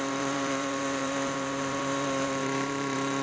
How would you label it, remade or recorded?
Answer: remade